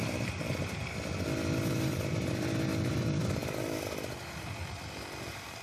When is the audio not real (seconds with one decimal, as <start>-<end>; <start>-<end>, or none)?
none